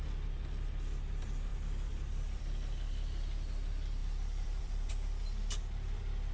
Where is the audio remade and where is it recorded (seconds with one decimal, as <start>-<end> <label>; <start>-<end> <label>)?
0.0-1.5 recorded; 1.5-2.4 remade; 2.4-4.0 recorded; 4.0-4.9 remade; 4.9-6.3 recorded